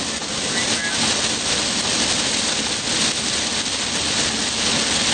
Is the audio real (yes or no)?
yes